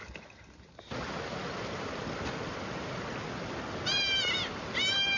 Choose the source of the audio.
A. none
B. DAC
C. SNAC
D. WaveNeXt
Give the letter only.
A